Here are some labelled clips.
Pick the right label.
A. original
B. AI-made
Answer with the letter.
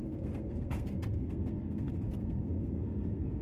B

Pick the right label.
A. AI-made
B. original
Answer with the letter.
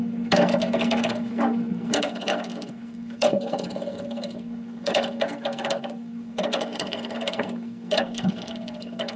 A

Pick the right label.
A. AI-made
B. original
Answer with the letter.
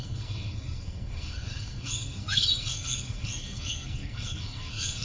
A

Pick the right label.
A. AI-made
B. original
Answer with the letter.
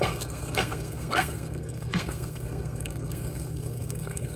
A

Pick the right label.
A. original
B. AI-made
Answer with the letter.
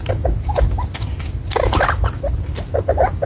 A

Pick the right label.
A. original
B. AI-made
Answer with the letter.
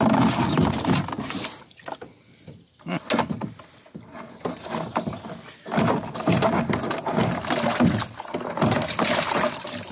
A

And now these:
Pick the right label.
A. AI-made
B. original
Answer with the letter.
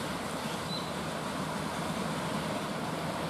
B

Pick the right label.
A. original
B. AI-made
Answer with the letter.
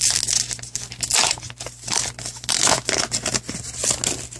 A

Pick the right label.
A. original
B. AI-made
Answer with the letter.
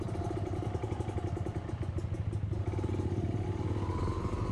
A